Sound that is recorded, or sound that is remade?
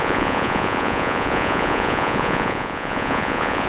remade